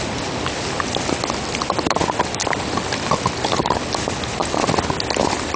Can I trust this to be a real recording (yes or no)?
yes